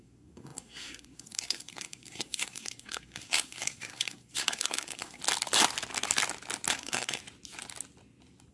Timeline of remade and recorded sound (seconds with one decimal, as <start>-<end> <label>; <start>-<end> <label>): 0.0-5.2 remade; 5.2-6.7 recorded; 6.7-7.2 remade; 7.2-8.5 recorded